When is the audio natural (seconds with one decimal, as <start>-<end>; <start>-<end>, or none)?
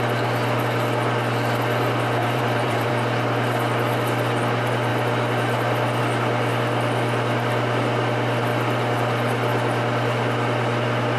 0.0-2.2; 2.9-11.2